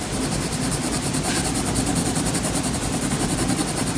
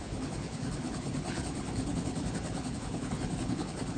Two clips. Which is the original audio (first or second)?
first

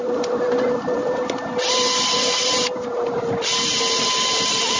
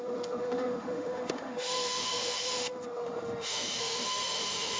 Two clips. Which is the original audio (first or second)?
first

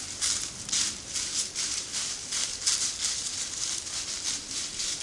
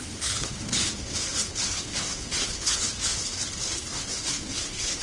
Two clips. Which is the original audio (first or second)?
first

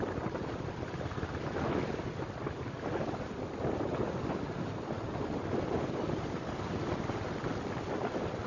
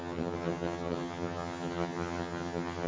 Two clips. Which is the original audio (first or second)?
first